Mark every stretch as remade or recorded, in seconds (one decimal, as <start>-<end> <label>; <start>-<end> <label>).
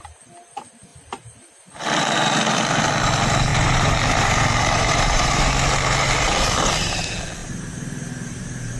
0.0-3.5 recorded; 3.5-5.5 remade; 5.5-7.4 recorded; 7.4-8.8 remade